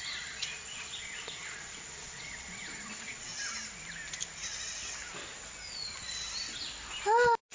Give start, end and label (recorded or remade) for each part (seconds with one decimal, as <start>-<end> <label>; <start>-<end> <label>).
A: 0.0-3.3 remade; 3.3-7.5 recorded